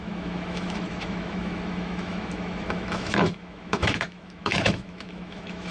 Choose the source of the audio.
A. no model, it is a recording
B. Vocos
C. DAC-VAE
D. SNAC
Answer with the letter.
C